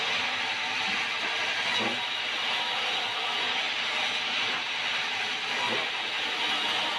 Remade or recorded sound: recorded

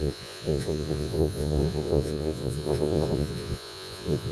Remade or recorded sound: remade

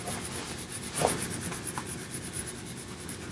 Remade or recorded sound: recorded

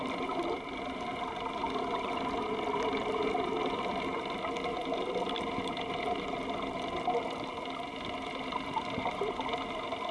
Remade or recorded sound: recorded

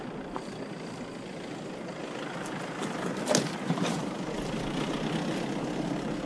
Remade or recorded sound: recorded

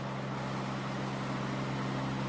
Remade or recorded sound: recorded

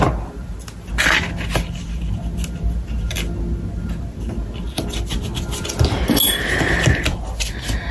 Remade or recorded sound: recorded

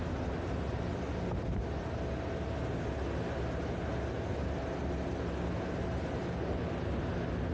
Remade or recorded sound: recorded